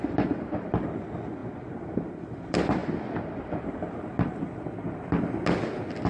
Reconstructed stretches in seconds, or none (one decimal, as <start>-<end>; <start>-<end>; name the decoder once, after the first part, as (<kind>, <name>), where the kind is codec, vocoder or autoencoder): none